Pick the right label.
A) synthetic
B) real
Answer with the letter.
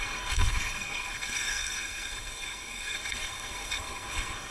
A